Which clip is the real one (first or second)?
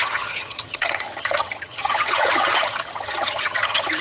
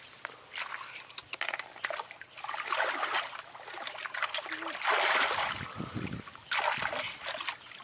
second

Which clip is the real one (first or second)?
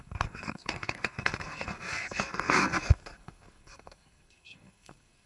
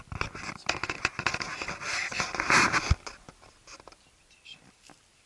second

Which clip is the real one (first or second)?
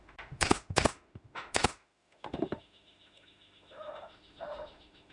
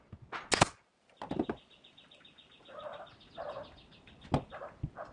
second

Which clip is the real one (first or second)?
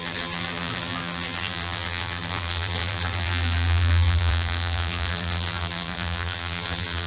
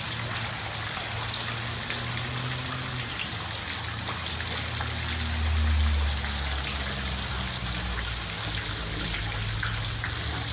second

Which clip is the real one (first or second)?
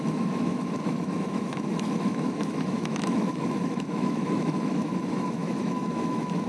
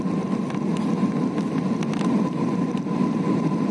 second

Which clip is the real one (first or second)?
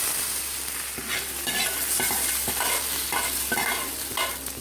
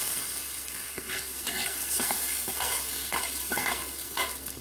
first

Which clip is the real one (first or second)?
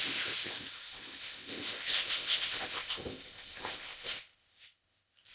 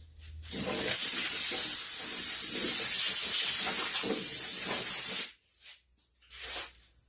second